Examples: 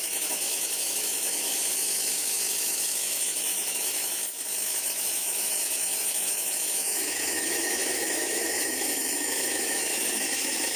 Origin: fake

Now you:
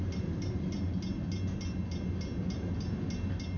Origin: real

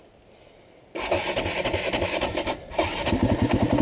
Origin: real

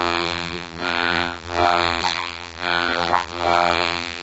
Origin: fake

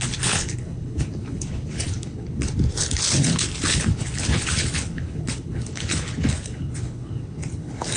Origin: fake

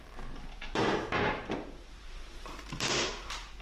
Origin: fake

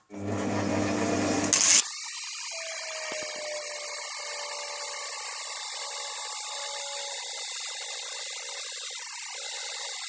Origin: real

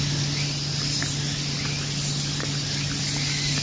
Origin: real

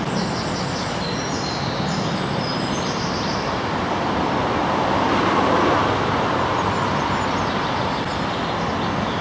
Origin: real